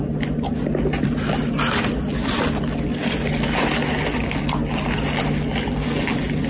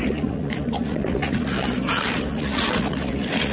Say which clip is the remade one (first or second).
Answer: second